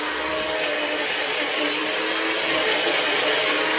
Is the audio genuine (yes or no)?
yes